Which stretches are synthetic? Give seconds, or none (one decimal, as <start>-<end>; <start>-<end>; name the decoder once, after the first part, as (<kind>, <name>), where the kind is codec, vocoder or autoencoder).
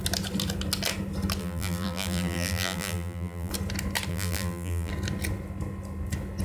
1.4-3.5 (vocoder, BigVGAN v2); 4.1-4.9